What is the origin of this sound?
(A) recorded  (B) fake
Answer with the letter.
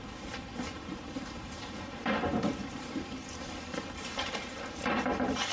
B